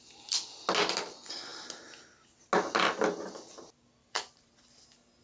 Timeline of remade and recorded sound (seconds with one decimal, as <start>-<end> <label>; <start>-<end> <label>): 0.0-4.0 recorded; 4.0-4.5 remade; 4.5-5.2 recorded